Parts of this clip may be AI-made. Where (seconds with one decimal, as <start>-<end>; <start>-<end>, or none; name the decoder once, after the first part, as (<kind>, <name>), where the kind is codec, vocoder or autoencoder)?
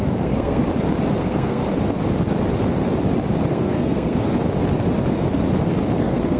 0.0-0.6 (codec, SNAC); 1.2-1.6; 3.5-4.3; 6.0-6.4